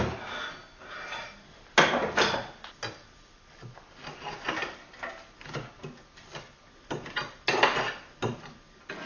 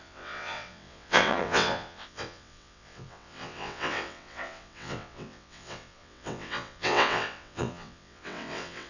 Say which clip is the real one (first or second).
first